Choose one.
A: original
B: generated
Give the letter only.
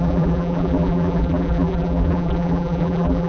B